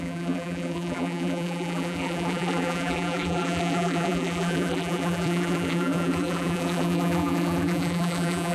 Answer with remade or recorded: remade